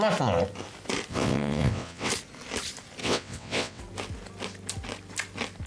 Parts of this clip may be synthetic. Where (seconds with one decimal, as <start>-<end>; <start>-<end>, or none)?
1.1-2.1; 3.0-3.8